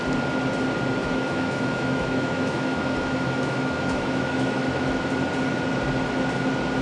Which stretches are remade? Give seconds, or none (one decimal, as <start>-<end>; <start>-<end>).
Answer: 1.0-5.1